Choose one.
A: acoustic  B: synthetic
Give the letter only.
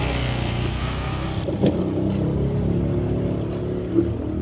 A